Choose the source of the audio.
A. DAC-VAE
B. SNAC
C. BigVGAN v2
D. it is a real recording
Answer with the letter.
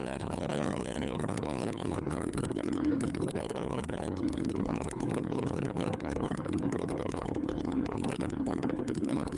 B